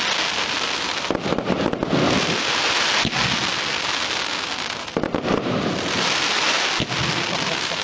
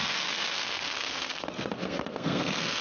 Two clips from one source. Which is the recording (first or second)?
first